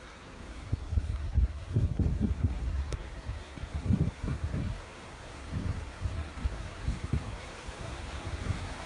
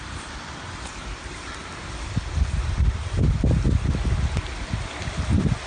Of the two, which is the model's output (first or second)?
first